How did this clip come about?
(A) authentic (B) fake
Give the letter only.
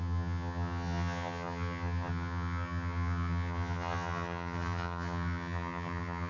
B